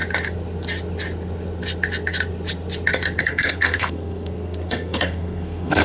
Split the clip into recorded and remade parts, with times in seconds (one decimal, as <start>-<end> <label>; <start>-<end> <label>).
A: 0.0-3.2 recorded; 3.2-5.8 remade